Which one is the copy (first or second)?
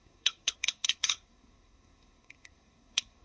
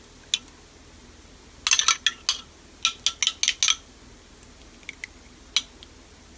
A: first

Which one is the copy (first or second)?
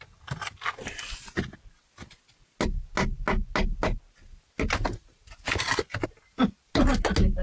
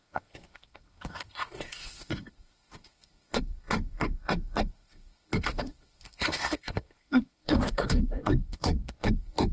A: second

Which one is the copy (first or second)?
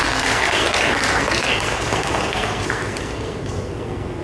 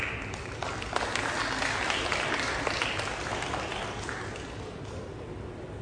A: first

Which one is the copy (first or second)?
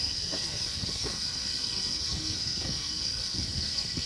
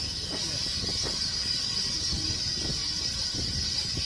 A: first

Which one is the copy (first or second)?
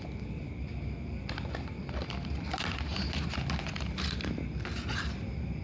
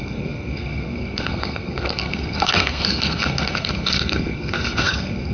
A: second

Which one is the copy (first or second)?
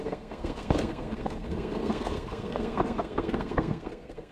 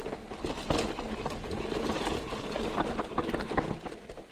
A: first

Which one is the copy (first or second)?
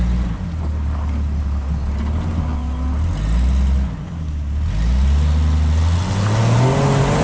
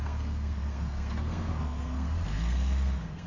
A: second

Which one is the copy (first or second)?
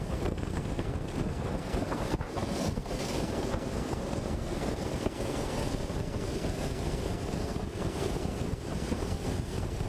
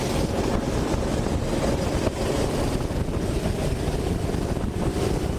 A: first